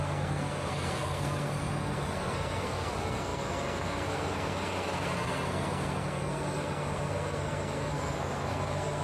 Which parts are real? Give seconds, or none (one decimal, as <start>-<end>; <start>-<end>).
none